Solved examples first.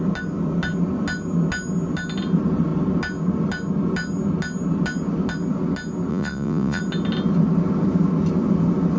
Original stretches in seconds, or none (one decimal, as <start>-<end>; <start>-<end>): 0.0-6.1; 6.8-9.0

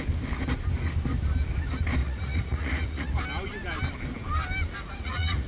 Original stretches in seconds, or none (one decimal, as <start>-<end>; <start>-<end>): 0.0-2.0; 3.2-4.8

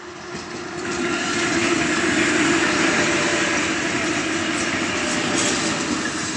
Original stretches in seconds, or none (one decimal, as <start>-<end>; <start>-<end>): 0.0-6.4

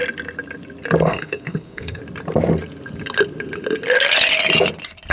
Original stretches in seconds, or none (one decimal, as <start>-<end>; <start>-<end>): 0.0-1.0; 2.0-5.1

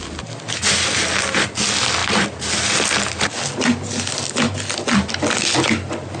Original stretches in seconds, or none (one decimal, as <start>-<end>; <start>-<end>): 0.0-6.2

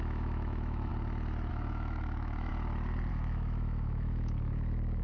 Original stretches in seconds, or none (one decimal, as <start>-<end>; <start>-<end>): 0.9-1.5; 2.5-3.1